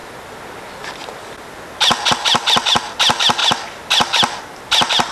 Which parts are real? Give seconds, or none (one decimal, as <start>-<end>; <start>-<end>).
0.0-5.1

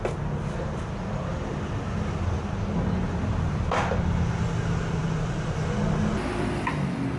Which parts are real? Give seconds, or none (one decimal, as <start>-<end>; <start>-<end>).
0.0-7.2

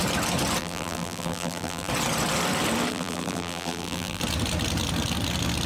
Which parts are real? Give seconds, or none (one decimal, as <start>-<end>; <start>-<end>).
0.0-0.6; 1.9-2.9; 4.2-5.7

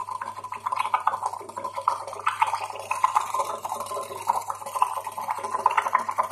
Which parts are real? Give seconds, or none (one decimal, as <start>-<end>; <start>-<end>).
0.0-6.3

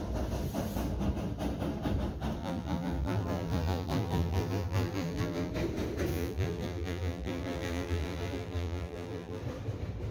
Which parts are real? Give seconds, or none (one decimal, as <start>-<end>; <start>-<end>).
0.0-2.4; 5.5-6.1; 9.4-10.1